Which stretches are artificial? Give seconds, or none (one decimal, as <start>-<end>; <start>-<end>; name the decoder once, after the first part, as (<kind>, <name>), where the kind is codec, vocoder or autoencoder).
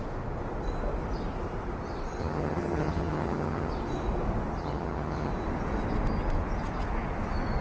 2.2-3.7 (vocoder, HiFi-GAN); 4.6-5.3